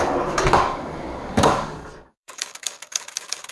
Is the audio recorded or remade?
remade